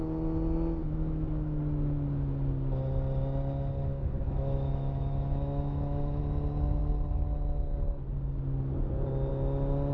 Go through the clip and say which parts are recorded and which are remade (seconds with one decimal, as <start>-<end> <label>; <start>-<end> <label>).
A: 0.0-0.8 recorded; 0.8-1.6 remade; 1.6-3.9 recorded; 3.9-6.2 remade; 6.2-9.9 recorded